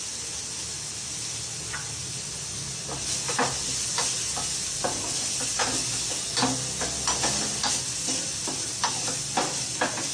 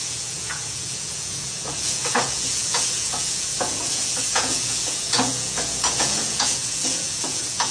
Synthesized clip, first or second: second